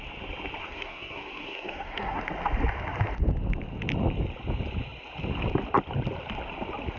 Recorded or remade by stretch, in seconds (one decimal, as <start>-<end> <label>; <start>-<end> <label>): 0.0-0.6 recorded; 0.6-2.2 remade; 2.2-7.0 recorded